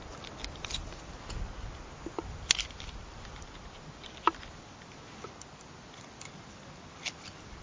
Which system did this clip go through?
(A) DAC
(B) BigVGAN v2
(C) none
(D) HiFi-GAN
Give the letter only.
C